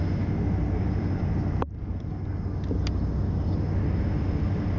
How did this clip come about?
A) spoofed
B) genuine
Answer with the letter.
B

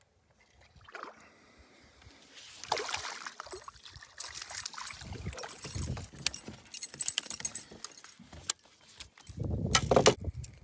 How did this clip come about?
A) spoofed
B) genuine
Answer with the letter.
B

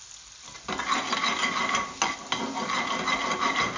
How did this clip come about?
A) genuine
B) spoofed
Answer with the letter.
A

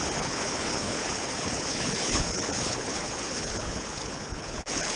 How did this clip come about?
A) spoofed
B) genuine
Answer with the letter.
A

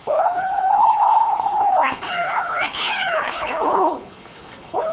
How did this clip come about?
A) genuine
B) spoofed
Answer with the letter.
B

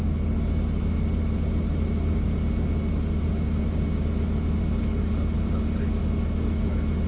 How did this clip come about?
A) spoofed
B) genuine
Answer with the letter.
B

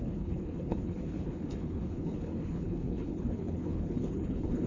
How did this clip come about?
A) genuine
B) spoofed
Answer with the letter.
B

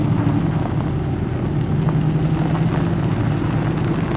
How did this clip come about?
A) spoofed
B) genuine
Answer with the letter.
B